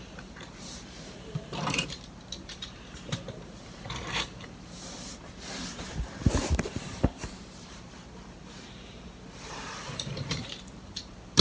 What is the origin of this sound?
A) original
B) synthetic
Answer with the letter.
B